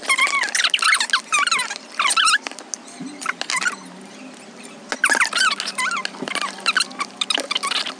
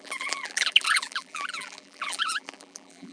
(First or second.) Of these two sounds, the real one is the first